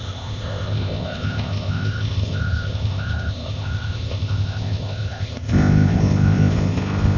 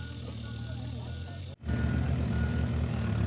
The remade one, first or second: first